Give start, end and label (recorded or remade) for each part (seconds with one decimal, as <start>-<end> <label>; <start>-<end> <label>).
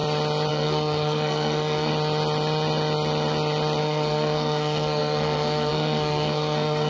0.0-0.5 recorded; 0.5-1.9 remade; 1.9-3.8 recorded; 3.8-6.9 remade